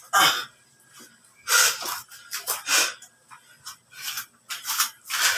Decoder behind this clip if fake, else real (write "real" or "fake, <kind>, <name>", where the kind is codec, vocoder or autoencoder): real